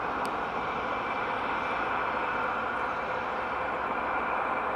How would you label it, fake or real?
real